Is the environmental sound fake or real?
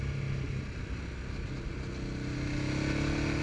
real